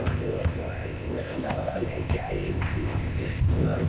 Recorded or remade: remade